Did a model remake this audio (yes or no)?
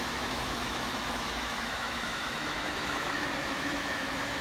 yes